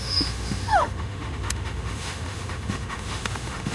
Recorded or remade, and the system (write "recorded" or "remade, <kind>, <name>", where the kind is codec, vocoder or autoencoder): remade, autoencoder, DAC-VAE